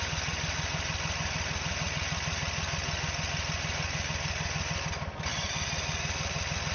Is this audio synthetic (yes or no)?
no